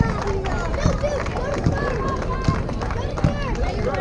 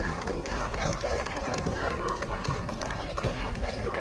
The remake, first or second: second